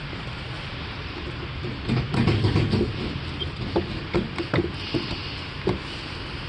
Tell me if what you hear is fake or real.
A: real